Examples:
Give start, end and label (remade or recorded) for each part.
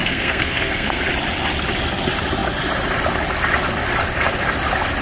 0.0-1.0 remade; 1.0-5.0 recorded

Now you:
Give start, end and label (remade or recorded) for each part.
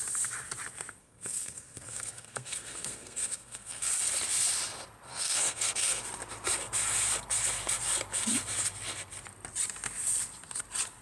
0.0-1.0 recorded; 1.0-3.9 remade; 3.9-5.1 recorded; 5.1-6.0 remade; 6.0-11.0 recorded